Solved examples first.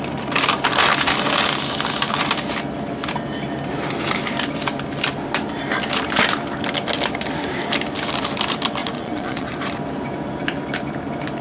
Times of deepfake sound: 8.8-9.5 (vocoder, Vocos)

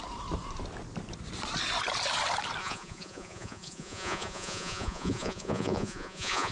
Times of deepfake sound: 2.6-6.5 (vocoder, Vocos)

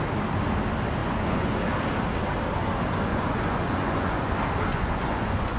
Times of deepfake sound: 1.0-1.6 (vocoder, Vocos); 3.1-4.3; 4.7-5.6

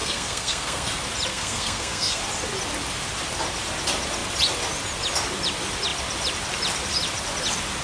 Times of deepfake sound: 0.0-0.9 (codec, SNAC); 1.3-2.2

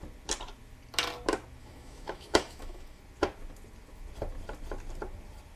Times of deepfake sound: 1.6-3.0 (autoencoder, DAC-VAE)

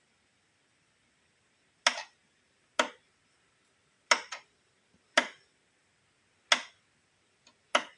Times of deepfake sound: none